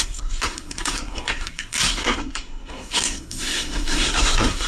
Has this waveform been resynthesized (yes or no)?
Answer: yes